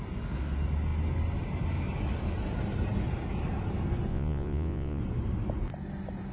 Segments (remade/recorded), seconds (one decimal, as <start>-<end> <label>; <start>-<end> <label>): 0.0-4.1 recorded; 4.1-5.0 remade; 5.0-6.3 recorded